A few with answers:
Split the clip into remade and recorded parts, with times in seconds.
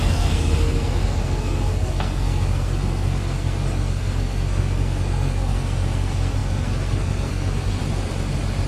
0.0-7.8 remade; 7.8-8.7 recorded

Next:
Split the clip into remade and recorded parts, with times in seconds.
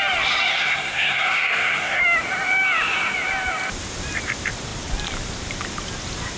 0.0-0.5 recorded; 0.5-2.0 remade; 2.0-6.4 recorded